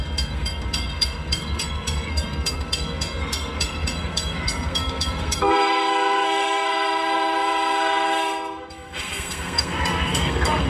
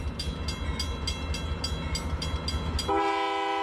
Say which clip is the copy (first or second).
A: first